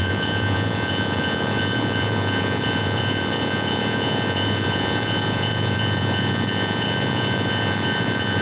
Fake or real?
fake